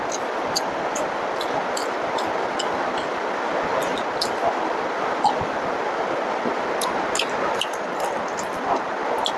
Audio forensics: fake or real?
real